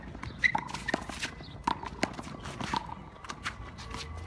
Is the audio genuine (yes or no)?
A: yes